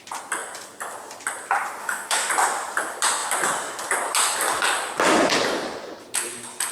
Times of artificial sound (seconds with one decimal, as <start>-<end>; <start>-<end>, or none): 1.8-2.3